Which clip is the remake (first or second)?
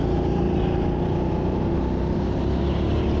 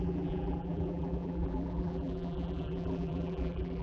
second